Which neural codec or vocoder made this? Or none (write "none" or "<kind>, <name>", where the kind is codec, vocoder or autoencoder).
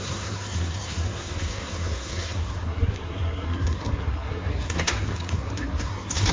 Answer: codec, SNAC